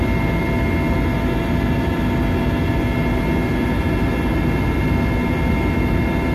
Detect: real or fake real